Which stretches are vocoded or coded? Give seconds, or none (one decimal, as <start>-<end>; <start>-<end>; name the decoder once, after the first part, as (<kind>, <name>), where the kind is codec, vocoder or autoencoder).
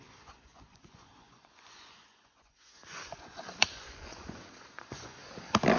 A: 0.0-5.2 (vocoder, Vocos)